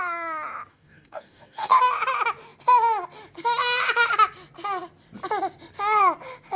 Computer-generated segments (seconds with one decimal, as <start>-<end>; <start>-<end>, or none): 0.7-1.8